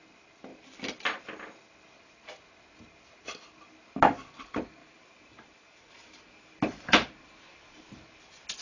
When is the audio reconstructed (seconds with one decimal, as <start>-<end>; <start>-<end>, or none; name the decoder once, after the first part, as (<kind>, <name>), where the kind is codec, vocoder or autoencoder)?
4.8-7.8 (vocoder, BigVGAN v2)